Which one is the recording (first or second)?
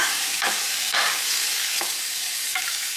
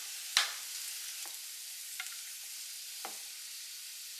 second